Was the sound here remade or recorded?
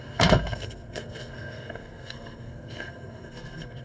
remade